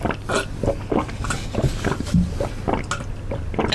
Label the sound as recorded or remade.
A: recorded